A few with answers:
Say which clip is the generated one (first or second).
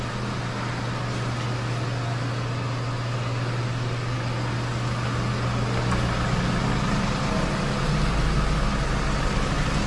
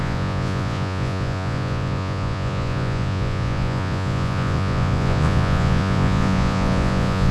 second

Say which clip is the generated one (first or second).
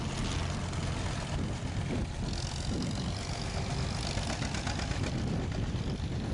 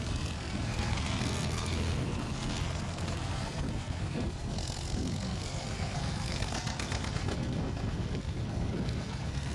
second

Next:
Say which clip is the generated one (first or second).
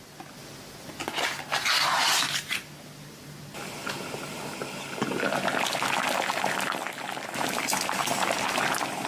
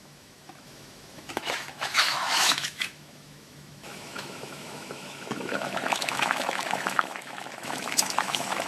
second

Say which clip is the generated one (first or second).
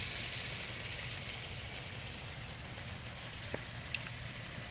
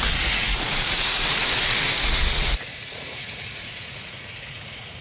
second